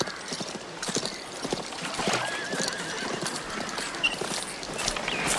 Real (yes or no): no